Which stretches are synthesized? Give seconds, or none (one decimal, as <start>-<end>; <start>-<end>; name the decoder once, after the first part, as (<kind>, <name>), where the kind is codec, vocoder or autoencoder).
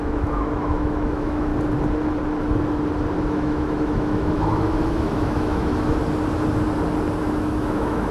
0.0-1.5 (autoencoder, DAC-VAE); 3.2-6.0; 7.2-8.1